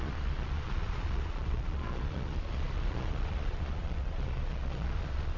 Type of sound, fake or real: fake